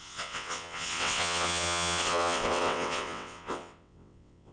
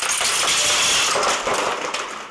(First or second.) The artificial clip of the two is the first